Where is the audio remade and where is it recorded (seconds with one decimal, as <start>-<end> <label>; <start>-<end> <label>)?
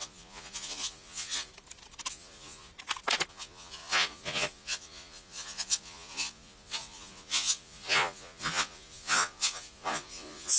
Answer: 0.0-1.5 remade; 1.5-2.1 recorded; 2.1-2.7 remade; 2.7-3.3 recorded; 3.3-10.6 remade